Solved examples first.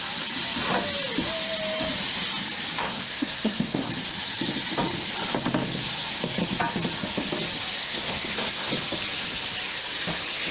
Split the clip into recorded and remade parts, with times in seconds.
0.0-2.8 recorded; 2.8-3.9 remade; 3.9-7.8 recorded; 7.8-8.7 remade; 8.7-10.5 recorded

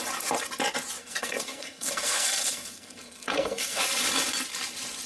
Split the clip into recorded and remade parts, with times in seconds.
0.0-1.0 recorded; 1.0-3.8 remade; 3.8-5.1 recorded

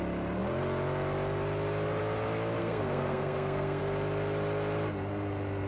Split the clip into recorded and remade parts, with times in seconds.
0.0-2.6 recorded; 2.6-3.8 remade; 3.8-5.7 recorded

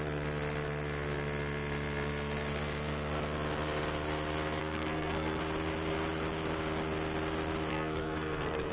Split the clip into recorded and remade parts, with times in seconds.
0.0-4.6 recorded; 4.6-5.4 remade; 5.4-7.7 recorded; 7.7-8.7 remade

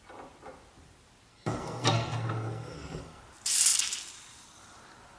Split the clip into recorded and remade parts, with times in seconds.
0.0-1.3 recorded; 1.3-3.2 remade; 3.2-5.2 recorded

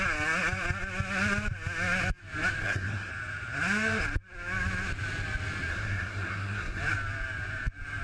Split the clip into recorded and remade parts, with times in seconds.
0.0-2.6 recorded; 2.6-3.1 remade; 3.1-5.7 recorded; 5.7-6.8 remade; 6.8-8.0 recorded

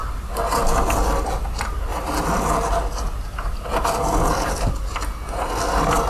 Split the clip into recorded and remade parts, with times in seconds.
0.0-6.1 recorded

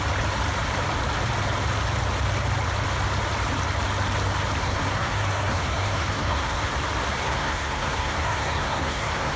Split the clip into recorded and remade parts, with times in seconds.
0.0-4.6 recorded; 4.6-6.7 remade; 6.7-7.2 recorded; 7.2-9.4 remade